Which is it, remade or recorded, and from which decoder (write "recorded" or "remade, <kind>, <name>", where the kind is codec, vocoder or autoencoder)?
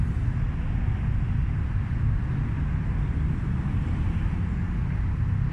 recorded